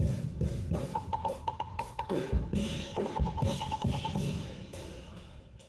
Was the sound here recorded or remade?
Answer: remade